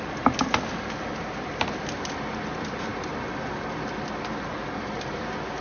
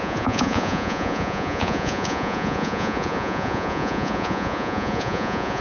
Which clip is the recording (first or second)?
first